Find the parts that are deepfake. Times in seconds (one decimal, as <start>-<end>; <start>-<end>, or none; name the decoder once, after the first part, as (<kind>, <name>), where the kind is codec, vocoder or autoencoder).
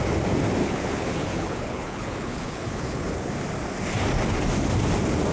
0.6-3.3 (codec, HILCodec)